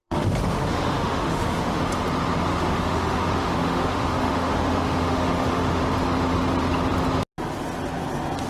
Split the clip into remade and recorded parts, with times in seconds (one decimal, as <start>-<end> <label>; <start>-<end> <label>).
0.0-1.8 remade; 1.8-2.5 recorded; 2.5-5.8 remade; 5.8-8.5 recorded